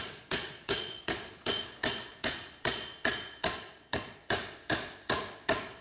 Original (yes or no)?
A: no